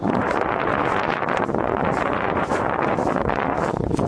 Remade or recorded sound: remade